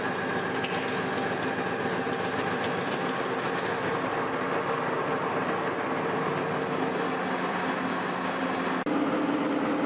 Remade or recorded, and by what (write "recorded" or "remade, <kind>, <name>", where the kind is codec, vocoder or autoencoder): recorded